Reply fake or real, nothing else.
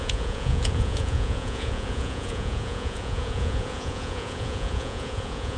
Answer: fake